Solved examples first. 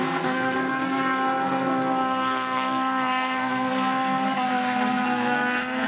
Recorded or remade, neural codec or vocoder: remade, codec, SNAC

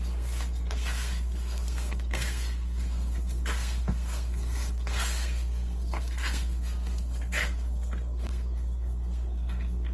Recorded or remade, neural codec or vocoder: remade, codec, SNAC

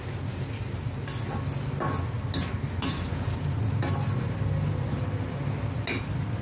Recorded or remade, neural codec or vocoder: recorded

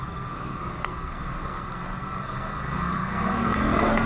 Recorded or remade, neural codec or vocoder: remade, codec, SNAC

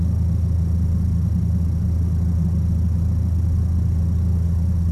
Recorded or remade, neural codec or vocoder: recorded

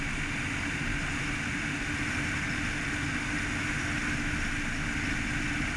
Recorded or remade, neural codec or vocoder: recorded